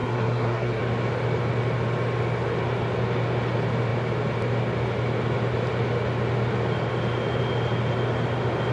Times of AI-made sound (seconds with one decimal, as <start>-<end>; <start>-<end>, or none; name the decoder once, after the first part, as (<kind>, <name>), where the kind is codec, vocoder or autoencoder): 0.0-0.8 (codec, SNAC)